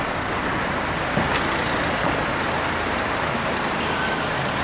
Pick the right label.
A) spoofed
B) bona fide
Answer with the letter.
B